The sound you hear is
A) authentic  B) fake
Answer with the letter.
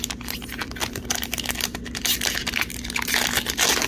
A